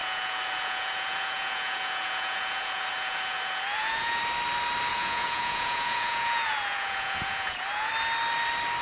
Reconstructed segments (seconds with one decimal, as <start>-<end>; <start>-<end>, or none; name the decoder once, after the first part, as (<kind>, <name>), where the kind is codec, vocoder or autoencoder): 0.0-4.2 (vocoder, Vocos); 4.9-7.9